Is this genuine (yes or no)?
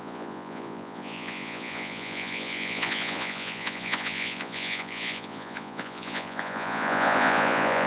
no